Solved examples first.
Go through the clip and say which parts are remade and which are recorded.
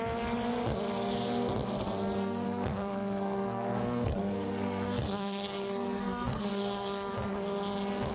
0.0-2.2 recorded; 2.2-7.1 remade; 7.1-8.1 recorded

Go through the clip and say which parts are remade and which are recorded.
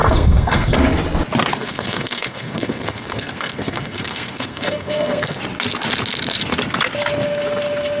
0.0-0.8 remade; 0.8-1.5 recorded; 1.5-5.4 remade; 5.4-8.0 recorded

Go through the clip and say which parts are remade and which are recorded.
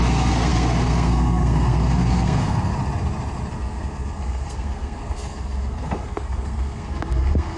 0.0-2.7 remade; 2.7-3.5 recorded; 3.5-7.6 remade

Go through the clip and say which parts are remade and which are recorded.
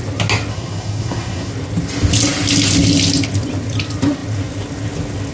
0.0-0.5 recorded; 0.5-1.5 remade; 1.5-5.3 recorded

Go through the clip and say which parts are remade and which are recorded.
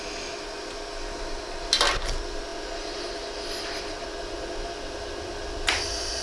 0.0-6.2 recorded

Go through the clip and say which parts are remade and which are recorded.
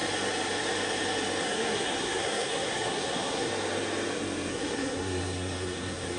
0.0-1.4 recorded; 1.4-3.5 remade; 3.5-4.5 recorded; 4.5-6.2 remade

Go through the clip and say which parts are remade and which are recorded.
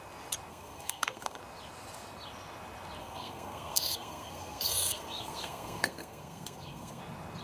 0.0-0.5 recorded; 0.5-1.4 remade; 1.4-3.0 recorded; 3.0-7.0 remade; 7.0-7.4 recorded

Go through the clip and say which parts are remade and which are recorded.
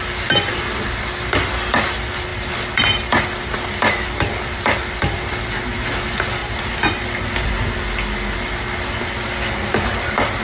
0.0-10.4 recorded